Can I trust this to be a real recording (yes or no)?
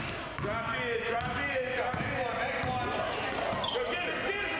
yes